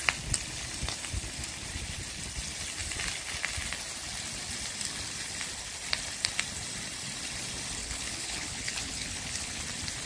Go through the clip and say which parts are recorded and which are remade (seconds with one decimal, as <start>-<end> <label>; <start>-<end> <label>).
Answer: 0.0-7.8 recorded; 7.8-9.6 remade; 9.6-10.1 recorded